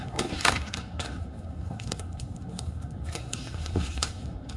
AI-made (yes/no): yes